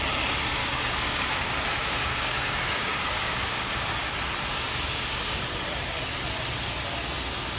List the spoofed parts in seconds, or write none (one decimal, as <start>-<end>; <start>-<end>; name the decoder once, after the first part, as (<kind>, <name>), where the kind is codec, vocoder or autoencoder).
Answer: 0.6-4.1 (codec, DAC); 4.5-5.4